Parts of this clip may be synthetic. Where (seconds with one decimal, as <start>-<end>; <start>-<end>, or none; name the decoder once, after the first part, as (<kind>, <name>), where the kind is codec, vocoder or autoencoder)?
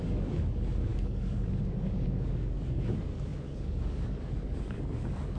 0.0-5.4 (codec, DAC)